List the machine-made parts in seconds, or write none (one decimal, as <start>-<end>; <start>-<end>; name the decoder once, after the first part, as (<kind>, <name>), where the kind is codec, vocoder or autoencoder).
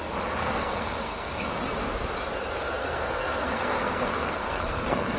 0.4-1.5 (codec, SNAC); 2.8-5.2